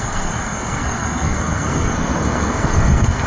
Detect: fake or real fake